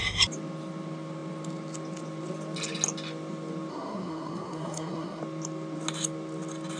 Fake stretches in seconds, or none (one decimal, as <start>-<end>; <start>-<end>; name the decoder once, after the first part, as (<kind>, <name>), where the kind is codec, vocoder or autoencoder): 3.7-5.2 (codec, SNAC)